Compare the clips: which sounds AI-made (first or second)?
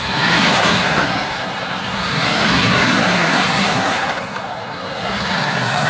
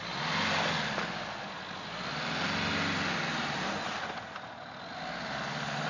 first